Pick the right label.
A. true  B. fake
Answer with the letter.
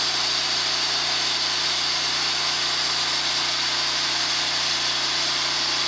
A